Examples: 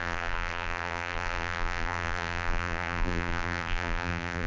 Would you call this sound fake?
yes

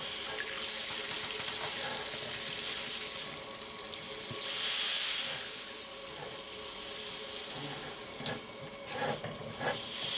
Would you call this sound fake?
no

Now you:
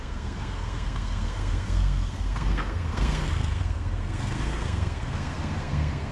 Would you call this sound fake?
yes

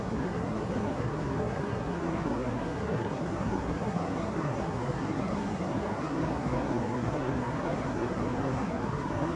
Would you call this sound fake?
yes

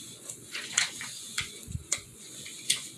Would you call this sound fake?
yes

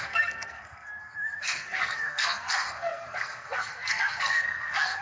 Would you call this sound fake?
yes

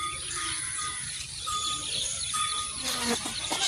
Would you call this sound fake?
yes